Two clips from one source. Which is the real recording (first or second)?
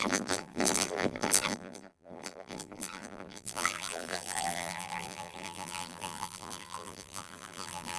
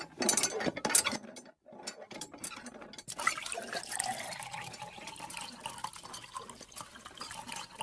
second